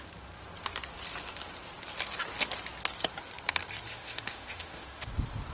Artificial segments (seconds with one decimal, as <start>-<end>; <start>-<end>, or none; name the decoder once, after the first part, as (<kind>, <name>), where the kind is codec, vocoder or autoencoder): 3.9-5.1 (autoencoder, DAC-VAE)